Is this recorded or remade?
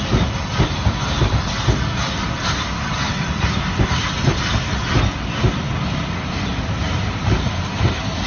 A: recorded